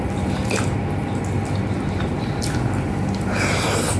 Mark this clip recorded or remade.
recorded